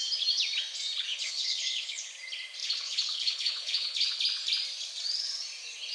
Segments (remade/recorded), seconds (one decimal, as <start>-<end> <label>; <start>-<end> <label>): 0.0-1.1 recorded; 1.1-2.1 remade; 2.1-2.6 recorded; 2.6-4.2 remade; 4.2-5.9 recorded